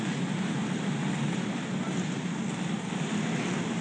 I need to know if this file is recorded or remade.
recorded